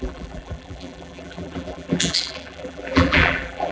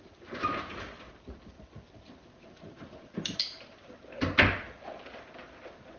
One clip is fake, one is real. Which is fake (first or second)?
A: first